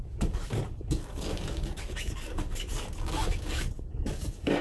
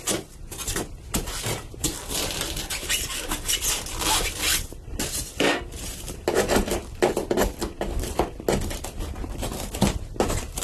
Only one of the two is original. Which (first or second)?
second